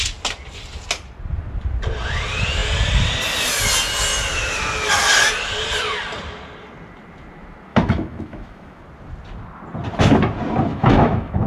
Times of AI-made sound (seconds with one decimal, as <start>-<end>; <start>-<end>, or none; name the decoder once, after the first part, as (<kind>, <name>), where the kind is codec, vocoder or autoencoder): 7.7-8.8 (autoencoder, DAC-VAE); 10.7-11.5